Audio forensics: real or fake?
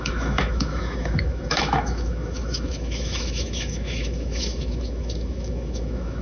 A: fake